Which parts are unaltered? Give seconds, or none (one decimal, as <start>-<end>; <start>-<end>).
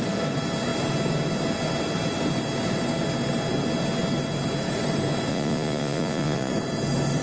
0.0-5.3; 6.5-7.2